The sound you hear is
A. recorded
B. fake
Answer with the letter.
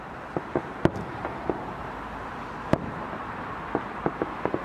A